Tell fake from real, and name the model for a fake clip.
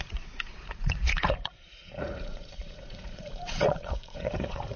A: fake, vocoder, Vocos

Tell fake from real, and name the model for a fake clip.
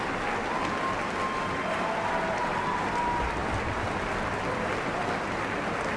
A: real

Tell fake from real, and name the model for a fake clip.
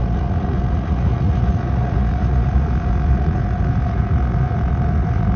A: fake, vocoder, Vocos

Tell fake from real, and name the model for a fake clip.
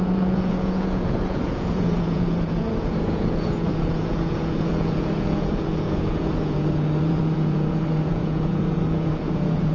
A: fake, vocoder, Vocos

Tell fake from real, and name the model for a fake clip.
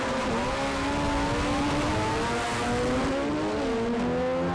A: real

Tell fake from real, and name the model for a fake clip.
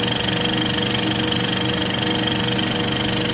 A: real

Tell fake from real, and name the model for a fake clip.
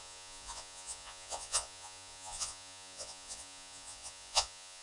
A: fake, vocoder, Vocos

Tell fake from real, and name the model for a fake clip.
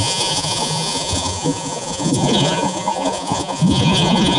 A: fake, vocoder, Vocos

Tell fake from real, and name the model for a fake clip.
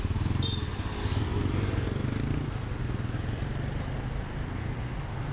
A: real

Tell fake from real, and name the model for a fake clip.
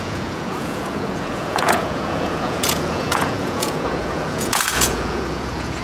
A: fake, vocoder, Vocos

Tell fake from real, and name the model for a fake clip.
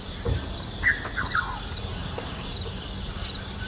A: real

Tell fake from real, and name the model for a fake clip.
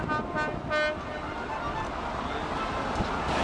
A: real